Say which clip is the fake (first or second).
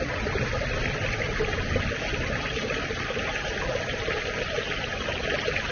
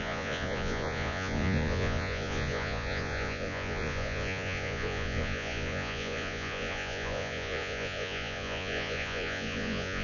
second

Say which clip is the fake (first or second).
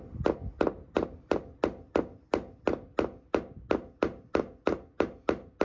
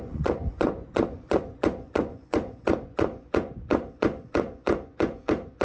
second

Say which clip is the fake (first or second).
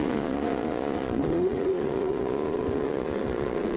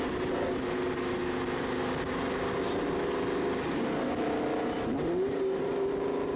first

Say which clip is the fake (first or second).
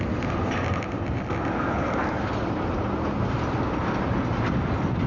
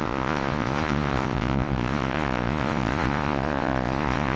second